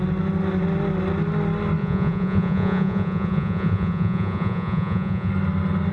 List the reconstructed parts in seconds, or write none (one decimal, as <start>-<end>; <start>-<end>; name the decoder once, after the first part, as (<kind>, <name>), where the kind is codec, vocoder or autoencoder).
1.8-5.3 (vocoder, Vocos)